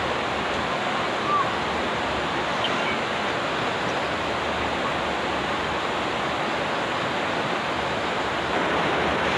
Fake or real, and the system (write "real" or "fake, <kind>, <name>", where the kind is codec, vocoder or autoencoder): real